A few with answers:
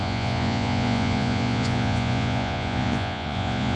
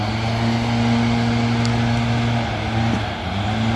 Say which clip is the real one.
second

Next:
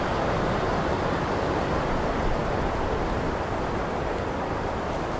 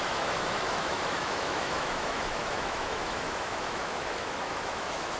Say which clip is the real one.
first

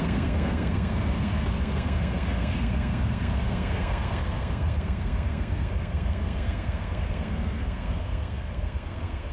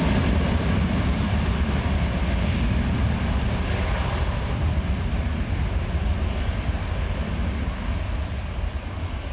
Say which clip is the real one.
second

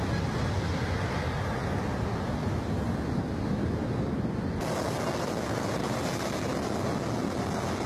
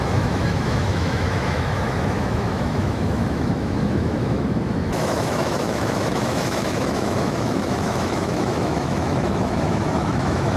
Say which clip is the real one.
first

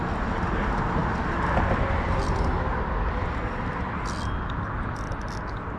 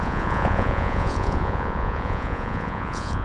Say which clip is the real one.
first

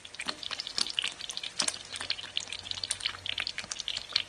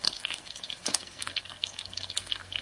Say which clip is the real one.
first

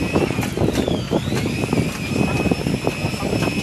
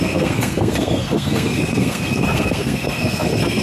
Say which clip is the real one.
first